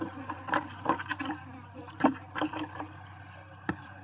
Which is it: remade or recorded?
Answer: remade